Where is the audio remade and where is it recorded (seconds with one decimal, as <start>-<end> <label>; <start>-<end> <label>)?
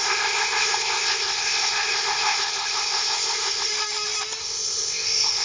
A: 0.0-3.7 remade; 3.7-4.4 recorded; 4.4-5.4 remade